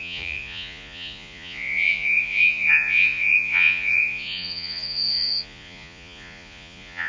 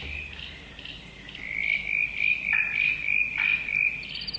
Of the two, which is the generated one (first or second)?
first